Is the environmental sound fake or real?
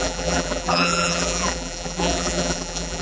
fake